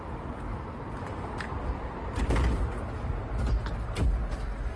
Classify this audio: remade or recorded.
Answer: recorded